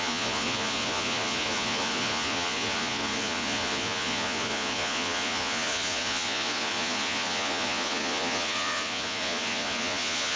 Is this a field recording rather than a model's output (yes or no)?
no